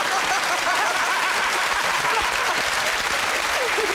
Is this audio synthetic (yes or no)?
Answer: yes